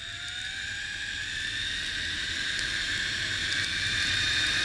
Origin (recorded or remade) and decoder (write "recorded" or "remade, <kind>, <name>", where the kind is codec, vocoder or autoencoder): remade, vocoder, BigVGAN v2